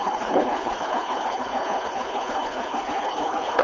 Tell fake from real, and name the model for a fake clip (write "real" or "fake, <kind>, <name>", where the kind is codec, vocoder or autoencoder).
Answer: fake, codec, HILCodec